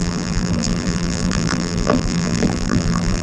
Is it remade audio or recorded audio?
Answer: remade